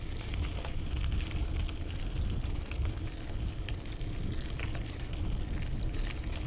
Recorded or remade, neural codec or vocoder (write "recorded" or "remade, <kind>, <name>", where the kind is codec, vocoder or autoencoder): recorded